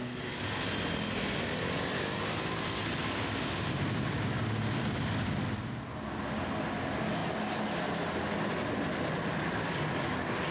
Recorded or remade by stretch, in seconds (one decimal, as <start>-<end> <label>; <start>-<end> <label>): 0.0-10.5 recorded